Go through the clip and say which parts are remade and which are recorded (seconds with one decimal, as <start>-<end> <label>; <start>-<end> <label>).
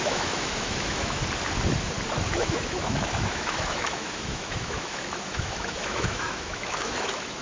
0.0-1.2 remade; 1.2-2.3 recorded; 2.3-7.4 remade